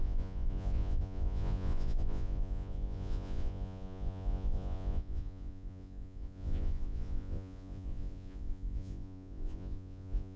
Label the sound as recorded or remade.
remade